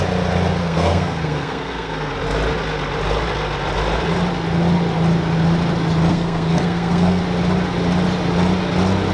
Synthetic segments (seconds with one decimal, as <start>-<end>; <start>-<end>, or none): 0.6-2.1; 6.1-7.2